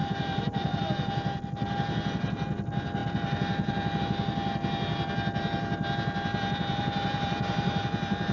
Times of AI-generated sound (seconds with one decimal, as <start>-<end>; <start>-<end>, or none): 0.0-0.8

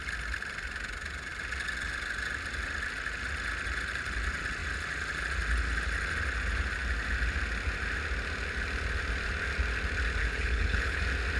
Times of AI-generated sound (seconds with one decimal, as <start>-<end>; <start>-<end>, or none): 10.2-11.0

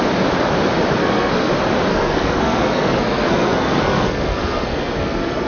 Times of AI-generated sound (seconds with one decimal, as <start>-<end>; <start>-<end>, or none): 1.0-1.5; 1.9-5.5

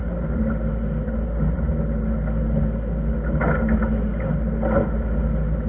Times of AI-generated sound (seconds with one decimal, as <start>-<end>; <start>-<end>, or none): none

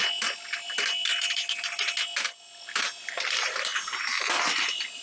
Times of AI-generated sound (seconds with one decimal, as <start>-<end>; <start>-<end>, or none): 3.0-3.7; 4.4-5.0

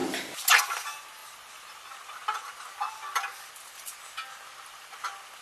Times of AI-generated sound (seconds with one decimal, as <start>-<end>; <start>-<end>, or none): none

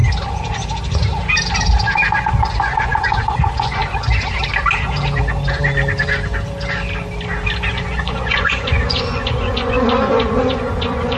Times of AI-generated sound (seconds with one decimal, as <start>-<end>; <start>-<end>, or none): 2.2-3.8; 7.7-11.2